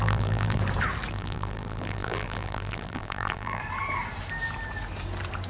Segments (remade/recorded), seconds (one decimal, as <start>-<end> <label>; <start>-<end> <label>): 0.0-0.6 remade; 0.6-1.1 recorded; 1.1-3.6 remade; 3.6-5.5 recorded

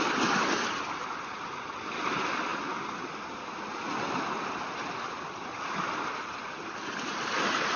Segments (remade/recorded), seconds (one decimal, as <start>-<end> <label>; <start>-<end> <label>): 0.0-7.8 recorded

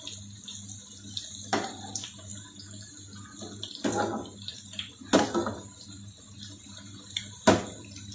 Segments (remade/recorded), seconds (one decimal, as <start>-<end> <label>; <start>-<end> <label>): 0.0-8.1 recorded